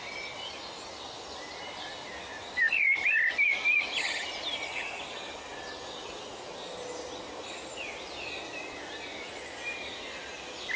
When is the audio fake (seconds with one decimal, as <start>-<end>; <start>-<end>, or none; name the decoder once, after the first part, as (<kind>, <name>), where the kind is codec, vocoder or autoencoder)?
2.1-3.8 (vocoder, BigVGAN v2)